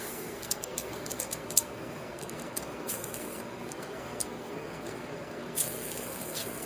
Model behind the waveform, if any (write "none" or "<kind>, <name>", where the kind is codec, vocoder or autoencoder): codec, SNAC